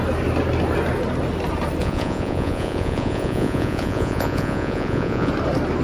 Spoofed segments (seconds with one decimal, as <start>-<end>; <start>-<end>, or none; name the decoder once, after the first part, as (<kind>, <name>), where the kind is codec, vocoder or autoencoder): 1.8-5.3 (vocoder, Vocos)